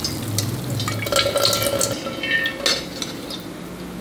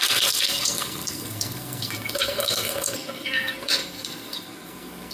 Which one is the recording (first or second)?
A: first